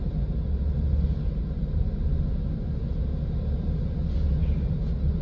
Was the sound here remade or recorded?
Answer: recorded